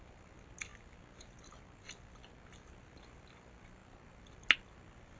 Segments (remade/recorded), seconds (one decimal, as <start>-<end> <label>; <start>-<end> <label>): 0.0-5.2 recorded